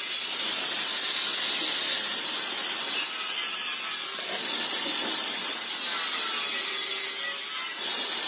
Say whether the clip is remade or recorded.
recorded